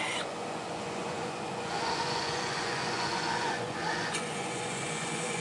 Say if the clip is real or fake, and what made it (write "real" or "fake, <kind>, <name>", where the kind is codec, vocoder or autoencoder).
fake, vocoder, Vocos